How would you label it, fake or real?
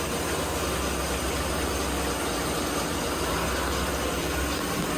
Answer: real